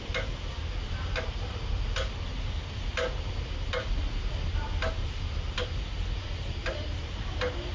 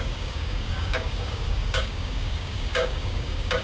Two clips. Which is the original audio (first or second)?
first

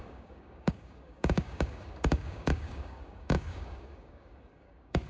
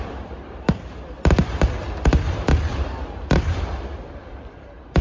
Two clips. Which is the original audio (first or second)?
second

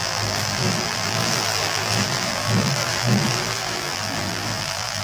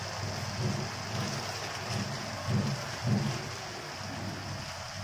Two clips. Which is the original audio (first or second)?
second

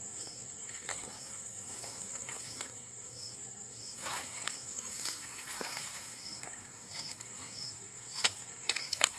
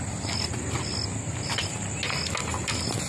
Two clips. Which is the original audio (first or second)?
second